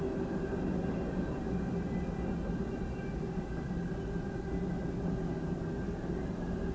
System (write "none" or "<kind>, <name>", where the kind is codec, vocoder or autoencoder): none